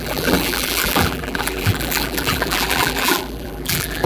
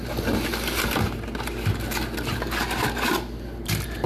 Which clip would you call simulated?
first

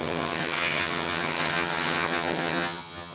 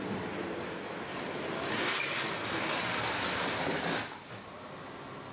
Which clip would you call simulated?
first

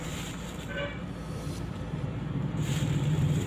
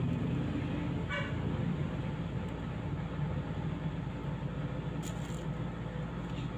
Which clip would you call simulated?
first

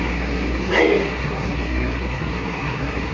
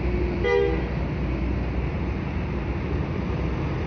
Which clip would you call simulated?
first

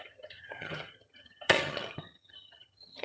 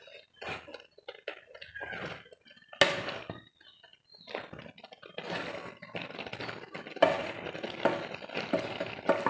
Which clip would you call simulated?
first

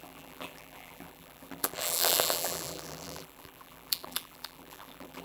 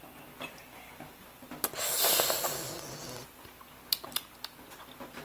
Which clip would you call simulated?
first